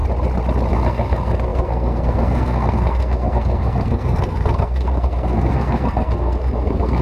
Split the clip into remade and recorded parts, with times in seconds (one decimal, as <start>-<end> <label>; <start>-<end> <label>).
0.0-0.7 recorded; 0.7-7.0 remade